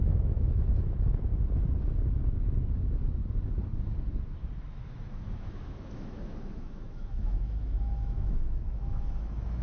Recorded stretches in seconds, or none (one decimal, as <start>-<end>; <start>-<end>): 1.3-4.6